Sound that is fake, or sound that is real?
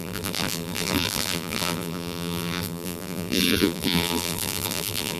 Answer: fake